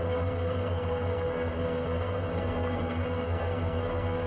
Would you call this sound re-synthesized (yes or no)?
yes